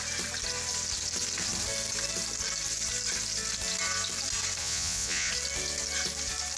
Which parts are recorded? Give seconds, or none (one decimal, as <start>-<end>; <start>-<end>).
0.0-4.6; 5.3-6.6